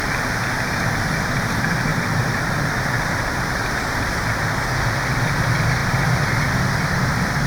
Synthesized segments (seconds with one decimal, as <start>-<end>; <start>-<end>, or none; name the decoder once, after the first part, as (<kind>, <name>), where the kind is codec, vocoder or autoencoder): 1.9-4.5 (vocoder, BigVGAN v2)